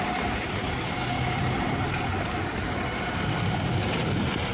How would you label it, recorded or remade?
recorded